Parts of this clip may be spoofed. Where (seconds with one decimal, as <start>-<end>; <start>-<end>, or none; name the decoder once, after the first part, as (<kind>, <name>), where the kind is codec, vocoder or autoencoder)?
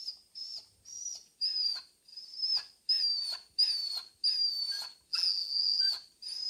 5.1-5.8 (vocoder, BigVGAN v2)